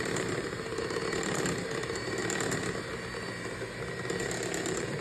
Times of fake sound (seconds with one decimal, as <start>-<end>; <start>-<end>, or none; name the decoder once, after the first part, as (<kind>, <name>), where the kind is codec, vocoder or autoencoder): 0.0-2.2 (vocoder, BigVGAN v2); 4.2-5.0